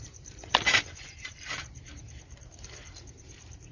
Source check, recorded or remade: remade